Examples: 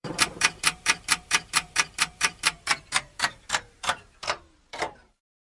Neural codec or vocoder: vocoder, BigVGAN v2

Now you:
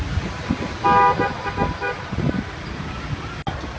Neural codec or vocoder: none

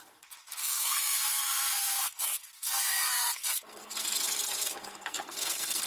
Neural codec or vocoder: codec, SNAC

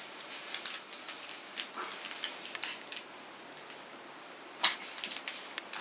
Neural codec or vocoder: none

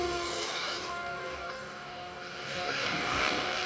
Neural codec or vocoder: codec, DAC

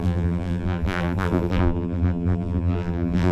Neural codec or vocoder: vocoder, BigVGAN v2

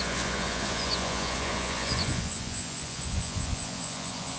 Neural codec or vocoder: vocoder, Vocos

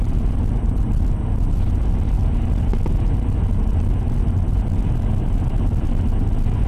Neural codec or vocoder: none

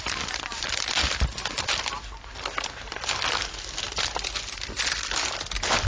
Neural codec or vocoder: none